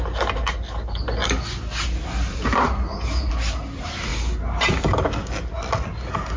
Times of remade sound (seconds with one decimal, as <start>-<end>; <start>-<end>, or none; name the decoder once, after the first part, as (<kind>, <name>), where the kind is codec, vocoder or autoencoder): none